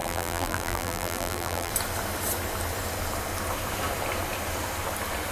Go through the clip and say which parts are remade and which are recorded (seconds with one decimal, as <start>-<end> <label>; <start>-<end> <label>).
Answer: 0.0-1.7 remade; 1.7-5.3 recorded